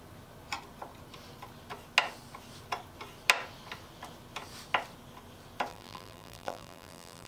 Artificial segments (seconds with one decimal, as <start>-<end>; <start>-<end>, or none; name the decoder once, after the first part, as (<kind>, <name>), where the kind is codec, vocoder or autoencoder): 5.7-7.3 (vocoder, BigVGAN v2)